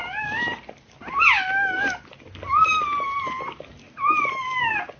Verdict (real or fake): real